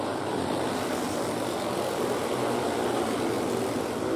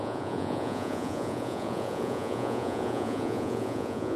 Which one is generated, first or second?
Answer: second